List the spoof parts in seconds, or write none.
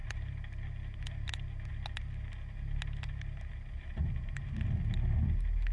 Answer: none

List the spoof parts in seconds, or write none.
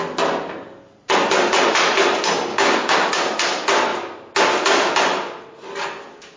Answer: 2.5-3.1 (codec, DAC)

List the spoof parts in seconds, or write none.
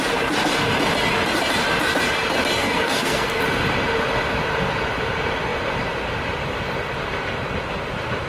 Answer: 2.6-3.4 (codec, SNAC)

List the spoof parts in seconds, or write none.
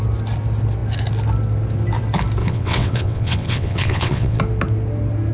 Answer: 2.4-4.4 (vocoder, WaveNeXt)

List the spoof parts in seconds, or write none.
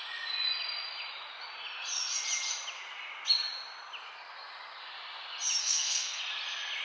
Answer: 5.6-6.2 (codec, SNAC)